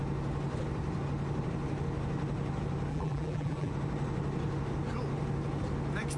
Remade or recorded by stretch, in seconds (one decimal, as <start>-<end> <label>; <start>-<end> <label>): 0.0-2.9 recorded; 2.9-3.7 remade; 3.7-6.2 recorded

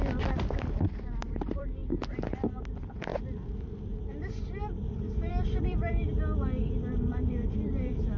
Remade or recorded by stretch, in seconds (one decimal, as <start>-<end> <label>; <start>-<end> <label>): 0.0-1.8 remade; 1.8-2.6 recorded; 2.6-3.1 remade; 3.1-4.8 recorded; 4.8-6.0 remade; 6.0-7.1 recorded; 7.1-8.2 remade

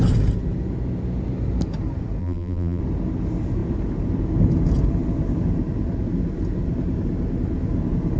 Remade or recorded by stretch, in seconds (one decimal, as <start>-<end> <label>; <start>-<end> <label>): 0.0-2.2 recorded; 2.2-2.8 remade; 2.8-8.2 recorded

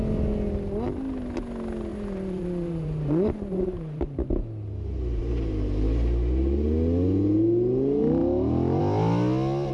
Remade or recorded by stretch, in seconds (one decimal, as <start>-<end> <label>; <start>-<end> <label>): 0.0-1.9 recorded; 1.9-4.3 remade; 4.3-9.7 recorded

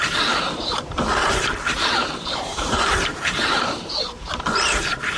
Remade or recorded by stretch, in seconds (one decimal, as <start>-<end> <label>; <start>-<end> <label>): 0.0-1.2 recorded; 1.2-4.2 remade; 4.2-5.2 recorded

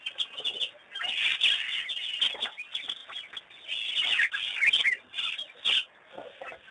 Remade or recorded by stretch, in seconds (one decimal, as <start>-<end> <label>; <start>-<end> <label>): 0.0-6.7 recorded

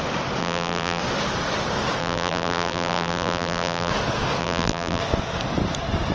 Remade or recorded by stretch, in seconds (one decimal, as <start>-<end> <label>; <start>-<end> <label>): 0.0-0.4 recorded; 0.4-1.0 remade; 1.0-2.0 recorded; 2.0-3.9 remade; 3.9-4.4 recorded; 4.4-5.0 remade; 5.0-6.1 recorded